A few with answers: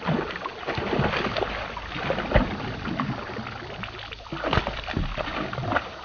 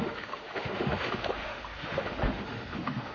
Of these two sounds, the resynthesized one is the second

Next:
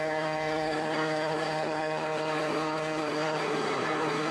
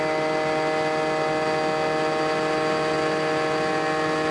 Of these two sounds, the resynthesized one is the first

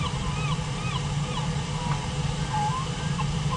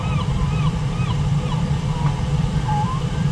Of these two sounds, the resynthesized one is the second